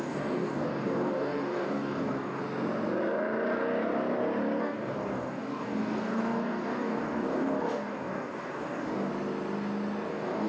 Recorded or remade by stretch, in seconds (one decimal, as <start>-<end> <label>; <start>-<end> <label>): 0.0-2.4 remade; 2.4-4.6 recorded; 4.6-9.1 remade; 9.1-10.1 recorded; 10.1-10.5 remade